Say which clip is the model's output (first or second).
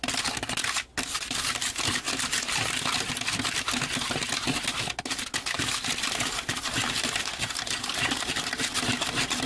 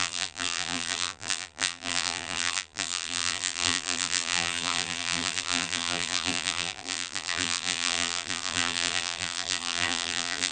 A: second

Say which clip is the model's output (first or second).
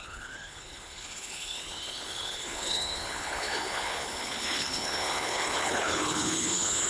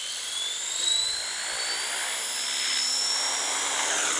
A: first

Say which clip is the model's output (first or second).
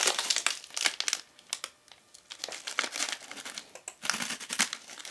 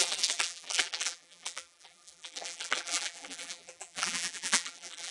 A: second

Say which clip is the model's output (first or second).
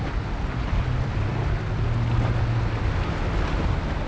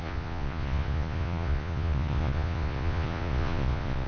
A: second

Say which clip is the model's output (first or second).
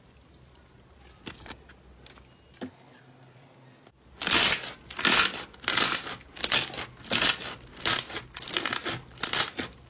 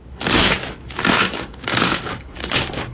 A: second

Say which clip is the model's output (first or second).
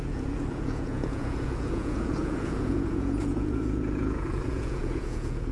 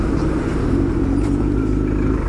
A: first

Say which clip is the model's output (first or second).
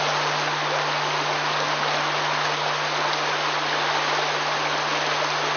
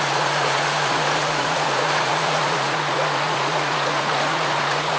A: second